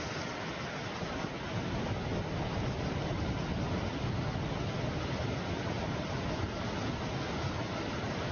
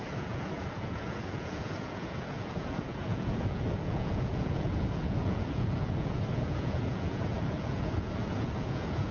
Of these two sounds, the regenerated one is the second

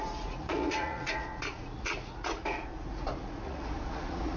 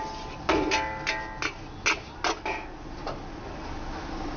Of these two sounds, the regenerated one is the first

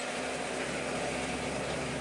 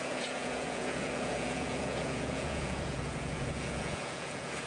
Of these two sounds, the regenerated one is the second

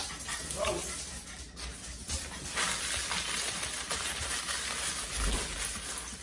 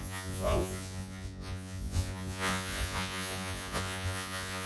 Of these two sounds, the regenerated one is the second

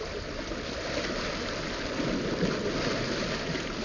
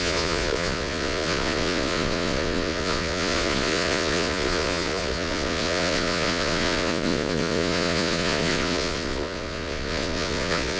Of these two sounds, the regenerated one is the second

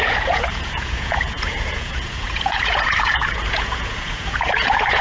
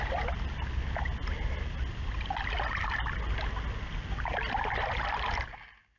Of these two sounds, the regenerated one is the first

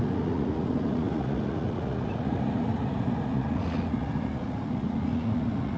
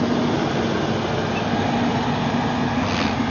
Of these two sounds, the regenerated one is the first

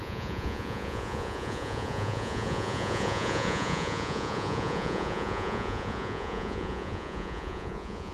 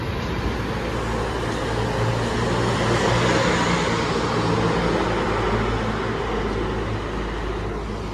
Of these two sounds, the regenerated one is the first